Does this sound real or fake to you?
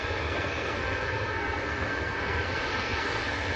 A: fake